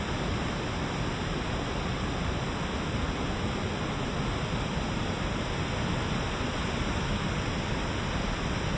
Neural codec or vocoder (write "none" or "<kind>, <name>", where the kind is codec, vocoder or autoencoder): none